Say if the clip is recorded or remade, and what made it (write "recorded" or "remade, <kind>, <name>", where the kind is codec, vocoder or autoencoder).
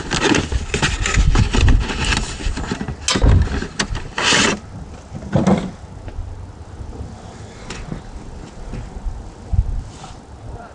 recorded